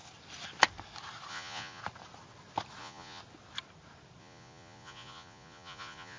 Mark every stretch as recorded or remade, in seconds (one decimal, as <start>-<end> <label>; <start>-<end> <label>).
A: 0.0-1.3 recorded; 1.3-1.8 remade; 1.8-2.8 recorded; 2.8-3.2 remade; 3.2-4.2 recorded; 4.2-6.2 remade